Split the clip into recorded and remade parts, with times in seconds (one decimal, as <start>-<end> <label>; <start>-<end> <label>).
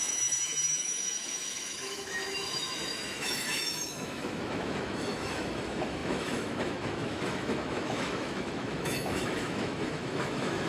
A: 0.0-10.7 remade